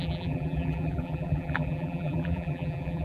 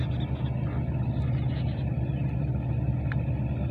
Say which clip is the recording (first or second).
second